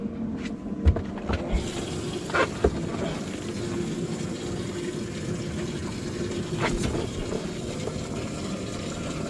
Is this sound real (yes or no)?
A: yes